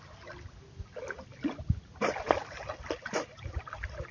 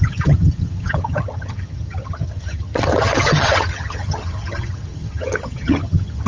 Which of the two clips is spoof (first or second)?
second